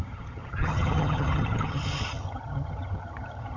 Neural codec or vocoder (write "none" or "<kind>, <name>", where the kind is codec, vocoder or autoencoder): vocoder, HiFi-GAN